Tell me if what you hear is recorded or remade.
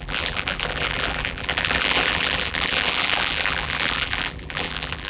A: remade